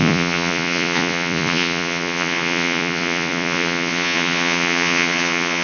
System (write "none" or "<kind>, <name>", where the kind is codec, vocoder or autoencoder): vocoder, Vocos